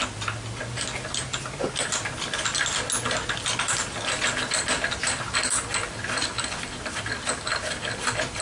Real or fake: real